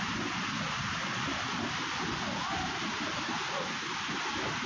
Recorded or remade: recorded